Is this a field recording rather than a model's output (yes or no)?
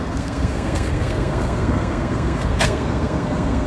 no